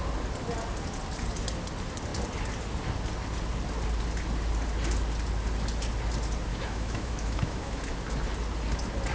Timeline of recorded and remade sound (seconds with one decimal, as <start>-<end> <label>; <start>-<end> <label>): 0.0-6.5 recorded; 6.5-7.9 remade; 7.9-9.1 recorded